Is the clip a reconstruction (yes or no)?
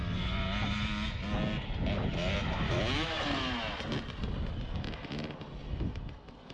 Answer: no